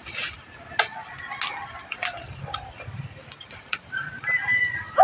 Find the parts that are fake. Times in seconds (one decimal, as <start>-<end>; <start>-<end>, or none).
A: none